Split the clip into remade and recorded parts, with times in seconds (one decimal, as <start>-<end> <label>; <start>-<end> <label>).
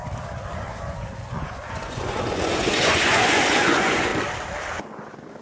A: 0.0-0.5 recorded; 0.5-4.1 remade; 4.1-5.4 recorded